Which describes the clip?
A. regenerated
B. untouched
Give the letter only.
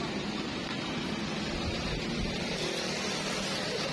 B